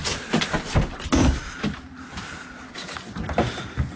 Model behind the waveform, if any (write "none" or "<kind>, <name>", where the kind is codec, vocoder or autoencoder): none